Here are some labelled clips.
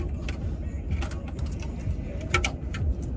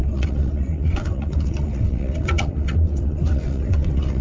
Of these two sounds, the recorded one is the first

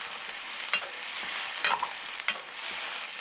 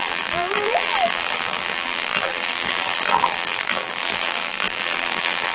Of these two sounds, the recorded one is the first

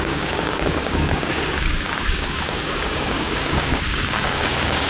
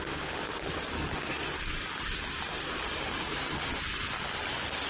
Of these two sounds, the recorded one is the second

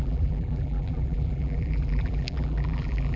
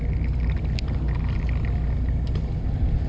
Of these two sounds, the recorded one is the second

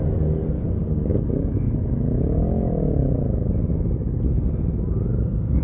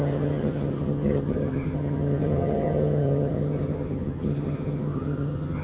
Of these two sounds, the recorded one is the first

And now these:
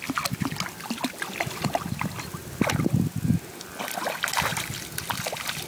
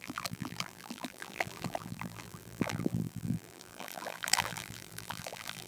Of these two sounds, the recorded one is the first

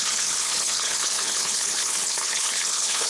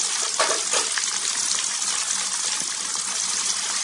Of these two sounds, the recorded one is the second